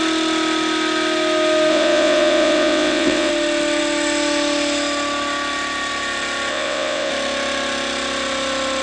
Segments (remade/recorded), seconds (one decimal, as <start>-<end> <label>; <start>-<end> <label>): 0.0-1.7 recorded; 1.7-3.3 remade; 3.3-6.5 recorded; 6.5-7.1 remade; 7.1-8.8 recorded